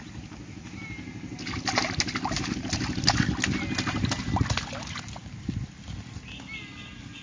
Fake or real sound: real